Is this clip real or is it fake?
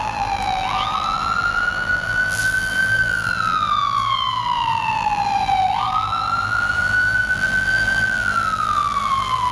fake